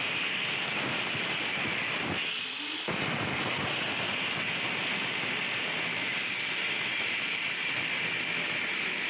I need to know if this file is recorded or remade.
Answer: recorded